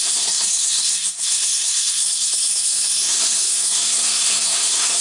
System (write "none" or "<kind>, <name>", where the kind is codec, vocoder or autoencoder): codec, SNAC